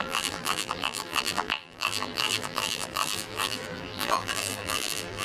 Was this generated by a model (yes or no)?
yes